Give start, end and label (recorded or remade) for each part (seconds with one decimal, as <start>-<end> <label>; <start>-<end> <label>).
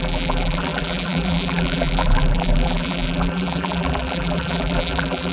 0.0-5.3 remade